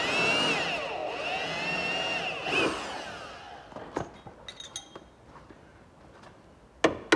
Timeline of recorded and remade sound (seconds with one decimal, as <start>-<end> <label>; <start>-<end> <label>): 0.0-7.2 recorded